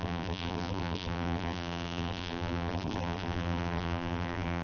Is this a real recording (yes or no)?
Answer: no